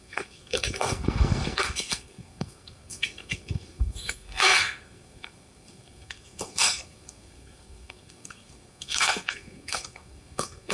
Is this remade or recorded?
remade